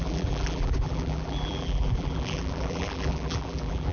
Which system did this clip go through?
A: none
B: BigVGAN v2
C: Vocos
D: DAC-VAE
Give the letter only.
B